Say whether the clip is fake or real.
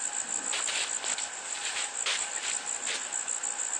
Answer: real